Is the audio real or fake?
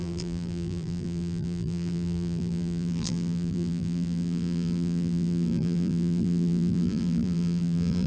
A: fake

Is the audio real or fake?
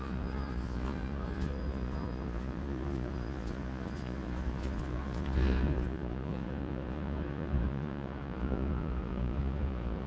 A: fake